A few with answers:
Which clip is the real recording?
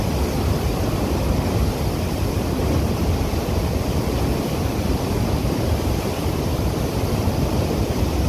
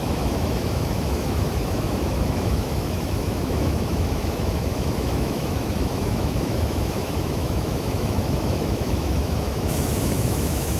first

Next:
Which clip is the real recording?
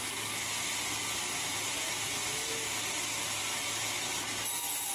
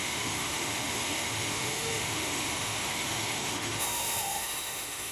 first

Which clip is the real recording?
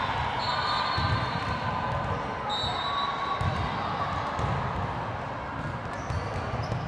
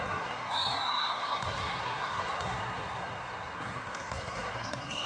first